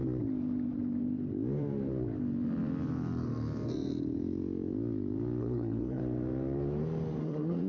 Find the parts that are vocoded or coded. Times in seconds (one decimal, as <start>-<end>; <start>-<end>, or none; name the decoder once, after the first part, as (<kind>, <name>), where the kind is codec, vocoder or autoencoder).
5.4-6.0 (codec, SNAC); 7.2-7.7